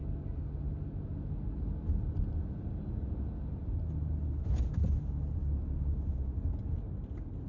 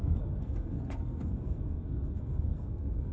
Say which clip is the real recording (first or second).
first